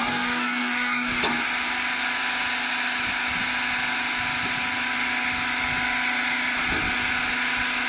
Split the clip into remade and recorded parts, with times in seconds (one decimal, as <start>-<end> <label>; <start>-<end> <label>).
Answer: 0.0-1.2 remade; 1.2-7.9 recorded